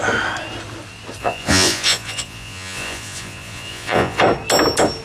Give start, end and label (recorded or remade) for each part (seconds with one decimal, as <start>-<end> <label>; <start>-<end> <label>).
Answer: 0.0-1.2 recorded; 1.2-4.2 remade; 4.2-5.0 recorded